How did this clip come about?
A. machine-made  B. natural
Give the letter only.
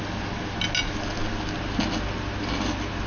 B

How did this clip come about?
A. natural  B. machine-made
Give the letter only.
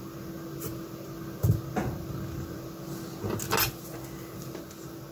A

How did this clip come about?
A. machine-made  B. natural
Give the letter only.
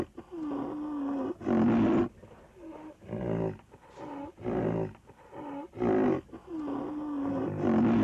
B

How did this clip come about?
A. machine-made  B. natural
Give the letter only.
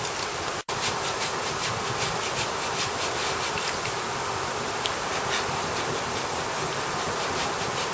B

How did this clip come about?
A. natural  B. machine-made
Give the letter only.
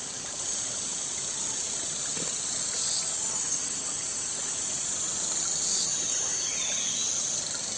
A